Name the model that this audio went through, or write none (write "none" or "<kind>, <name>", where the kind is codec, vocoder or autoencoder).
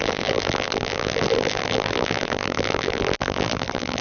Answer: vocoder, BigVGAN v2